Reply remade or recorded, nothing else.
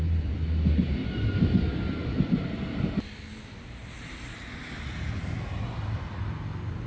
recorded